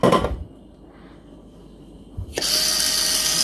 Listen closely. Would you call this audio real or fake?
real